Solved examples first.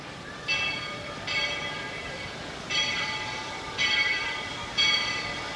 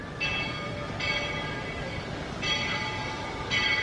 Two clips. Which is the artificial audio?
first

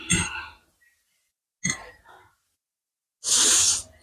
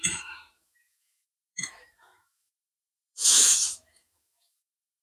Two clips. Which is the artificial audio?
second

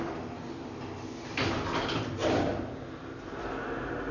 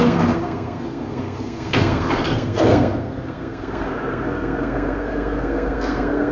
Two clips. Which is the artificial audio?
second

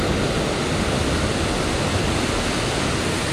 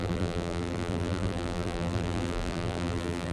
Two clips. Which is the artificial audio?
second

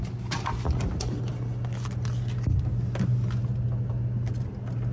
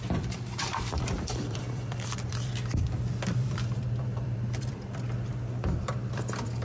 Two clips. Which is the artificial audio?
second